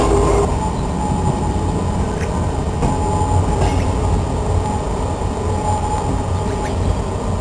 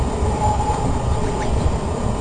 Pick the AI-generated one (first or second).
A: second